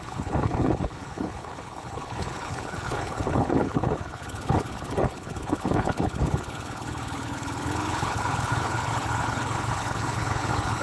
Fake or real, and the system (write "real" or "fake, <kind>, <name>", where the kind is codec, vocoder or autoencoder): fake, codec, HILCodec